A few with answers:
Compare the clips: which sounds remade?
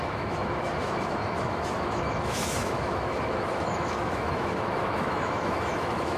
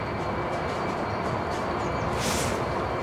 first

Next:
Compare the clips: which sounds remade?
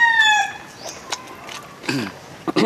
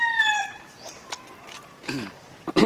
second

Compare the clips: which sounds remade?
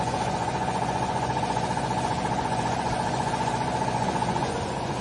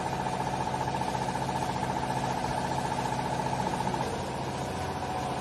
first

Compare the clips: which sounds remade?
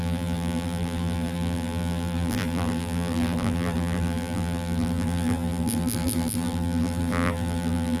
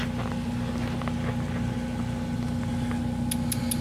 first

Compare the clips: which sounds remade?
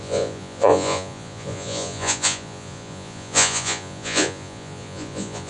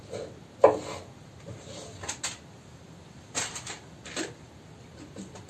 first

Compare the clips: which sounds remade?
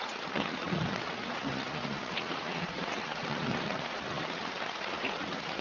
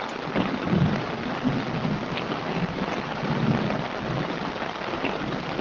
first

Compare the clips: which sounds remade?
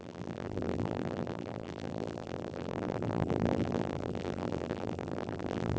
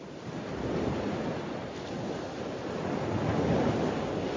first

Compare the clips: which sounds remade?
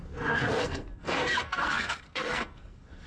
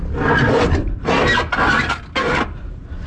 first